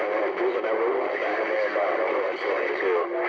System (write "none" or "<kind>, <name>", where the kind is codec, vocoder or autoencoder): none